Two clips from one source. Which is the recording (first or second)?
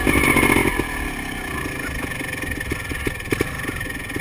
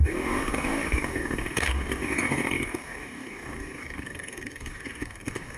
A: first